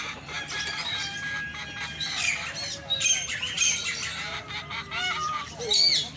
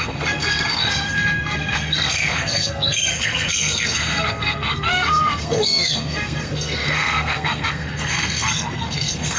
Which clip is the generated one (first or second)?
second